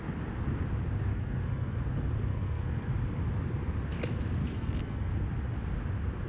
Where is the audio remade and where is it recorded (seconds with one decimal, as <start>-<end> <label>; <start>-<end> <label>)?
0.0-1.1 recorded; 1.1-1.8 remade; 1.8-2.3 recorded; 2.3-2.9 remade; 2.9-4.4 recorded; 4.4-5.1 remade; 5.1-6.3 recorded

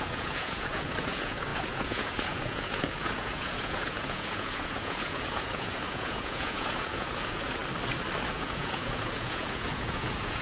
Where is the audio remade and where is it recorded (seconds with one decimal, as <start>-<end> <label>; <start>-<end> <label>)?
0.0-7.6 remade; 7.6-8.3 recorded; 8.3-10.4 remade

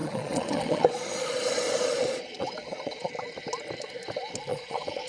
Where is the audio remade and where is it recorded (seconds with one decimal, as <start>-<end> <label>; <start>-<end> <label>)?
0.0-3.1 remade; 3.1-4.5 recorded; 4.5-5.1 remade

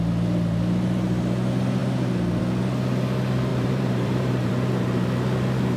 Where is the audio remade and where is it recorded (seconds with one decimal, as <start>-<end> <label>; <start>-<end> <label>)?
0.0-3.5 recorded; 3.5-4.5 remade; 4.5-5.8 recorded